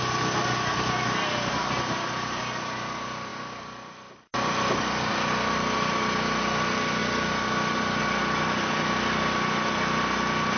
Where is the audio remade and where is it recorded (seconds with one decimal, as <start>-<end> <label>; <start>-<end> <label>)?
0.0-10.6 recorded